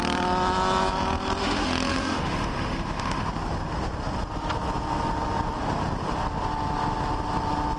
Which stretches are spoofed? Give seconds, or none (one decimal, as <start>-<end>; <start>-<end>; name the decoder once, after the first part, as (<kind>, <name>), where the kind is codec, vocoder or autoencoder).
1.4-3.3 (autoencoder, DAC-VAE)